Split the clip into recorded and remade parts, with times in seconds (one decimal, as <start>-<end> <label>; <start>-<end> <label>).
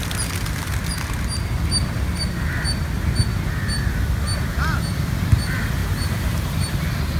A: 0.0-5.8 recorded; 5.8-6.7 remade; 6.7-7.2 recorded